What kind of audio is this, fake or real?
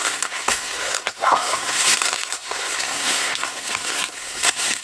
fake